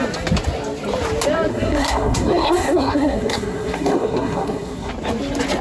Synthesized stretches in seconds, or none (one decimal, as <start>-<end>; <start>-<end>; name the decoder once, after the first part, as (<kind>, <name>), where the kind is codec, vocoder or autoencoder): 1.5-4.9 (codec, SNAC)